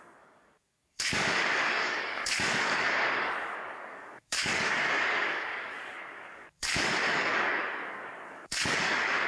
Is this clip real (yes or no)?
no